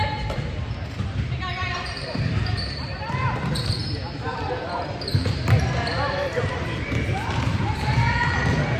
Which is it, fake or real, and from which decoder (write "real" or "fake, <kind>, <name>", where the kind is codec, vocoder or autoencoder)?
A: fake, vocoder, BigVGAN v2